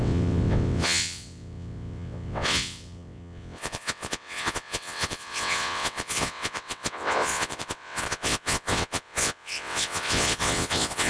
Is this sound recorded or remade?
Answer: remade